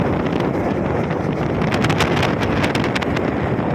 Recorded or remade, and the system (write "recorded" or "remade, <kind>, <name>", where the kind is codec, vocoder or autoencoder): recorded